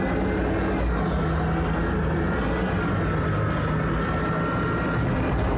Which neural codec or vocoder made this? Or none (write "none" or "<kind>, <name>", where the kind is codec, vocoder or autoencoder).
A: none